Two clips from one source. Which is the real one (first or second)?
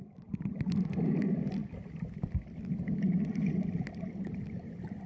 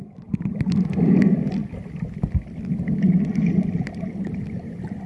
second